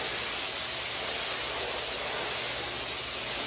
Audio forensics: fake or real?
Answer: real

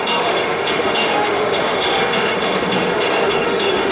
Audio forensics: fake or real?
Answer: fake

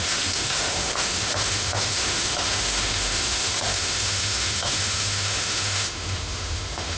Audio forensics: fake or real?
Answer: fake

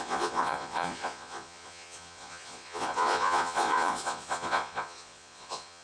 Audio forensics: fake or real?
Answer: fake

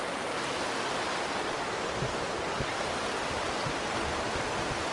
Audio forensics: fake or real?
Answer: real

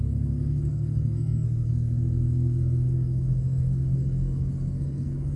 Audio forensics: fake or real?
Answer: fake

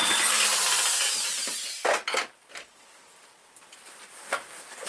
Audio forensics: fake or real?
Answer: real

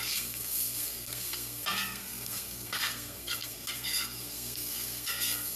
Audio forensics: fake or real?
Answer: fake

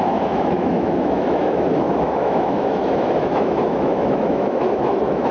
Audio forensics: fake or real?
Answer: fake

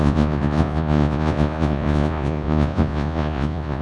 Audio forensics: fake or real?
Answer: fake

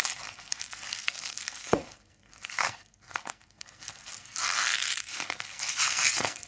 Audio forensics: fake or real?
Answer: fake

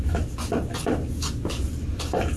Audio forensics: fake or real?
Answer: real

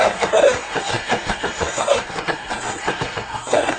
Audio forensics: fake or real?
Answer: fake